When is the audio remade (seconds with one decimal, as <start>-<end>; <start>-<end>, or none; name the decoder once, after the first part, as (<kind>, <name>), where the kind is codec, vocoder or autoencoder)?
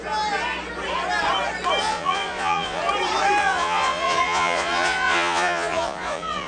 1.8-2.8 (vocoder, Vocos); 3.4-6.5